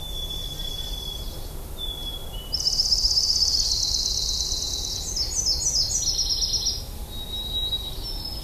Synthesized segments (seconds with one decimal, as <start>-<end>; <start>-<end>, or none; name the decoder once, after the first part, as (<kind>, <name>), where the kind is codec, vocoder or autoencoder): none